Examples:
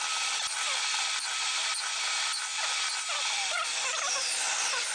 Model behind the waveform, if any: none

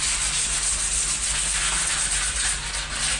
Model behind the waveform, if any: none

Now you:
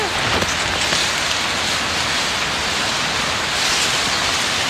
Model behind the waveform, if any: none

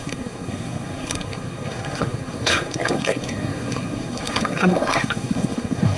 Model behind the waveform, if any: codec, SNAC